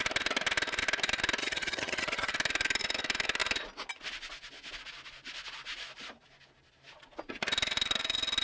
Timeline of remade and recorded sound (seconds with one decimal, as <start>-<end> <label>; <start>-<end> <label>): 0.0-1.4 recorded; 1.4-2.3 remade; 2.3-8.4 recorded